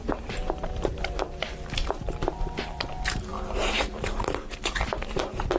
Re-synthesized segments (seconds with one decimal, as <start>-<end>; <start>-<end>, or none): 0.0-5.6